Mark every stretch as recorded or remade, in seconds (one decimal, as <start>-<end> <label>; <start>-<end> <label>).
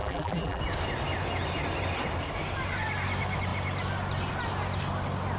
0.0-0.6 remade; 0.6-5.4 recorded